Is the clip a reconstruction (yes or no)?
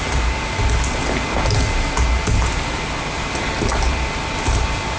no